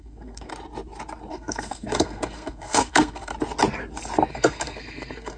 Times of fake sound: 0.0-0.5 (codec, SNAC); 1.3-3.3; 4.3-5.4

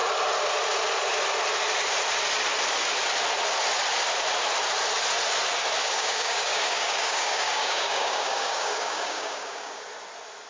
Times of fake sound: 5.8-9.8 (codec, DAC)

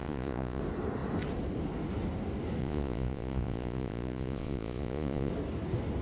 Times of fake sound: 0.0-0.6 (vocoder, Vocos); 2.6-5.3